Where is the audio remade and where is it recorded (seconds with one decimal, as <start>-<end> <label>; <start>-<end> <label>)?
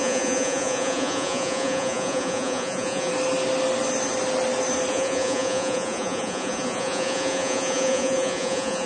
0.0-3.1 remade; 3.1-4.9 recorded; 4.9-8.9 remade